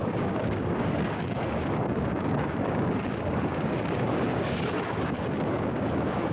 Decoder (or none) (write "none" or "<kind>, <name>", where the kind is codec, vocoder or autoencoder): codec, DAC